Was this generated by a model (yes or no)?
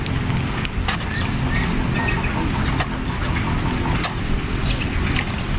no